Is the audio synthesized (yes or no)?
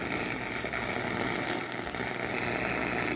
no